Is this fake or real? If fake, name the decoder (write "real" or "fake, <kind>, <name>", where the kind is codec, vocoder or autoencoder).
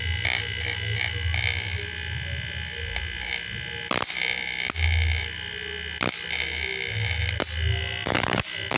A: real